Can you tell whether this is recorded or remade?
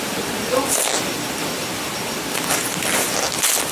remade